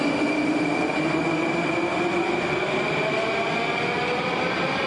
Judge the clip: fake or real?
real